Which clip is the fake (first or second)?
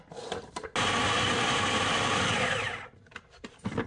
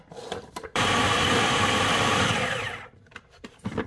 second